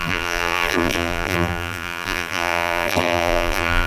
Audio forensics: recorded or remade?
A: remade